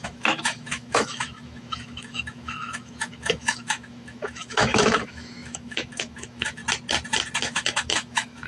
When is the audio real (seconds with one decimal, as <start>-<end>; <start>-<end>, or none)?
6.6-7.4

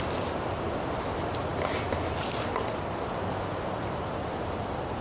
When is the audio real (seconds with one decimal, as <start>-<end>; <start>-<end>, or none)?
0.0-5.0

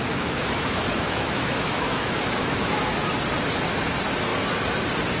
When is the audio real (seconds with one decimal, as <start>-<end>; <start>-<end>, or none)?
3.1-5.2

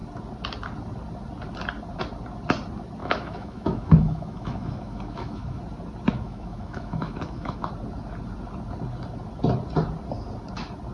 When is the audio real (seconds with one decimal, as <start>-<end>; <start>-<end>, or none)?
0.0-3.0; 5.6-6.1; 7.7-10.9

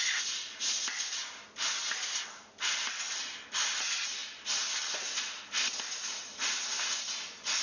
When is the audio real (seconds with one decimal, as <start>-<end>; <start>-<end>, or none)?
0.0-7.6

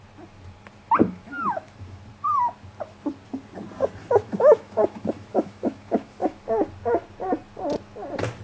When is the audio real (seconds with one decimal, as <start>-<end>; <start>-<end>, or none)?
0.0-1.0; 2.0-4.0; 6.4-8.4

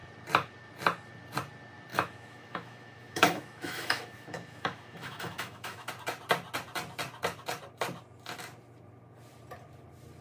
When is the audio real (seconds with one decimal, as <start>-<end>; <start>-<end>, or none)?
0.0-1.9; 5.9-10.2

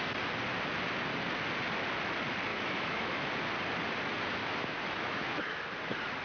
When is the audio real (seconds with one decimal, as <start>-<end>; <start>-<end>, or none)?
0.0-2.5; 3.3-4.4; 5.6-6.2